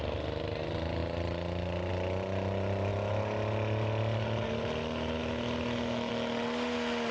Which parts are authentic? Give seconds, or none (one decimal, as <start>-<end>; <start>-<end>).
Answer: 0.0-7.1